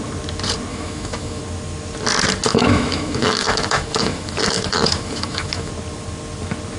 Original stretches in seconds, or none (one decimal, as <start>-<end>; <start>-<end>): 0.0-0.7; 1.4-2.5; 5.7-6.8